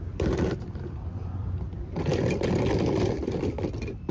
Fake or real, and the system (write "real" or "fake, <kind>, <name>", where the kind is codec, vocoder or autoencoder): real